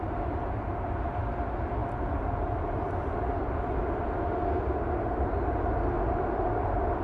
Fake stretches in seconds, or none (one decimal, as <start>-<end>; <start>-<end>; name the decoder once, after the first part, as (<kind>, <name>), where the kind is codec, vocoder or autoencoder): none